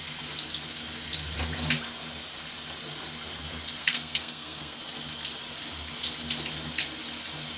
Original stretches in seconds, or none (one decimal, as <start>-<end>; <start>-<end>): 0.0-3.8; 4.8-7.6